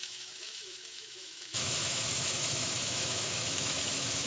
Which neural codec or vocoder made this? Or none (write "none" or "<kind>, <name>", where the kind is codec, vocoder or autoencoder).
autoencoder, DAC-VAE